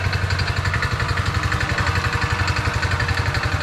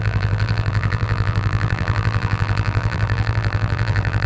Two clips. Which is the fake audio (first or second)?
second